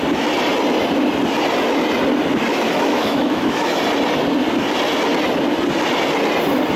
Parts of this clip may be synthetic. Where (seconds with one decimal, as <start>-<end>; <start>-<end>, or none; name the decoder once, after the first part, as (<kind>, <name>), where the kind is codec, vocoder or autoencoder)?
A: 2.5-3.8 (autoencoder, DAC-VAE)